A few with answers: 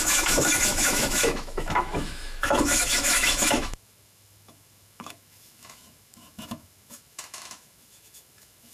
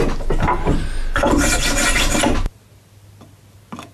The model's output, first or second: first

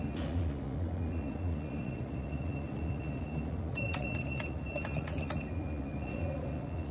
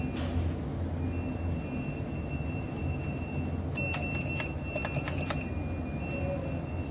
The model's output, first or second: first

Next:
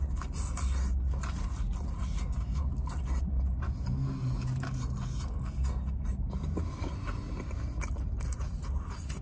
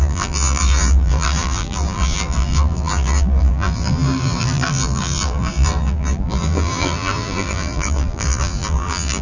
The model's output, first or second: second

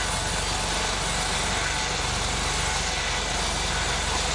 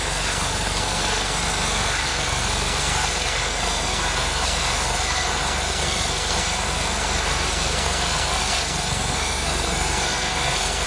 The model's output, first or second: second